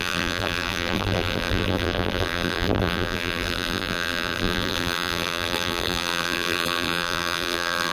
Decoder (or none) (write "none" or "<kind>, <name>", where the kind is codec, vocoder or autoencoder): vocoder, BigVGAN v2